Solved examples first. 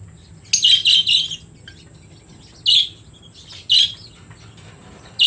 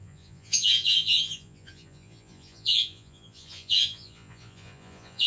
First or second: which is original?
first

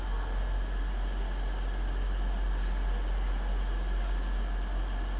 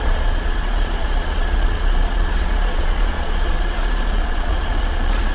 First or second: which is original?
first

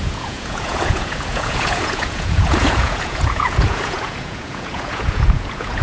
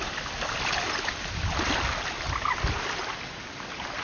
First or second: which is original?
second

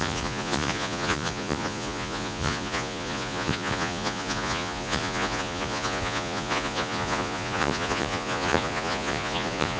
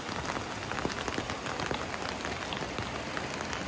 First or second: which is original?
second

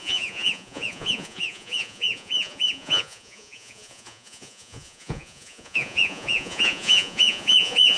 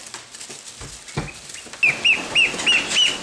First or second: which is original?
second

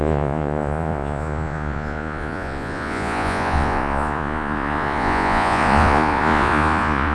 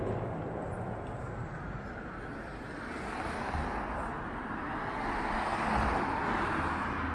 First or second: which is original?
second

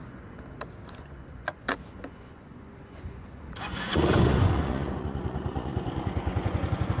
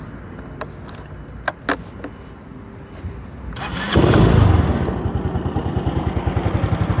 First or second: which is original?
second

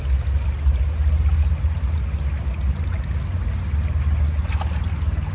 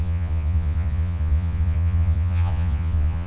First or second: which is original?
first